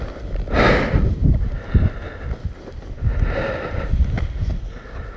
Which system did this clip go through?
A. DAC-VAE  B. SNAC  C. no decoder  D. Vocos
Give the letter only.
C